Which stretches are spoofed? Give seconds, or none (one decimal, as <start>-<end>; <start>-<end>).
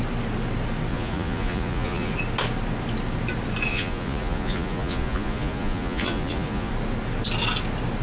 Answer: 0.9-2.1; 3.7-6.7